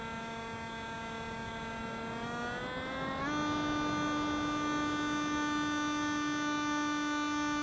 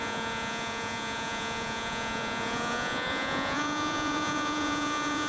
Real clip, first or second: first